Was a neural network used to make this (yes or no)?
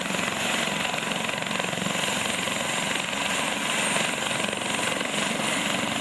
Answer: no